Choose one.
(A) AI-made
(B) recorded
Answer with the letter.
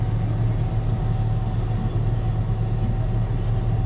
B